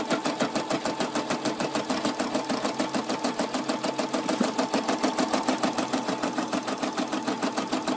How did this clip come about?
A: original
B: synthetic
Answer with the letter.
A